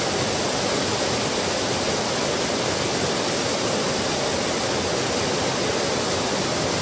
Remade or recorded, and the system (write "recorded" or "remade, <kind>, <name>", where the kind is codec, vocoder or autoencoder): recorded